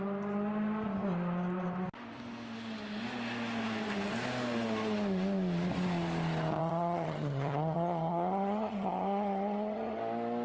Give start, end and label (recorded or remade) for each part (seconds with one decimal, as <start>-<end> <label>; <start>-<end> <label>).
0.0-6.6 recorded; 6.6-10.0 remade; 10.0-10.4 recorded